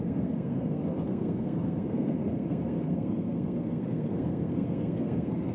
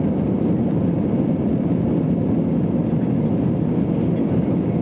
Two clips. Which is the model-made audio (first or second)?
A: first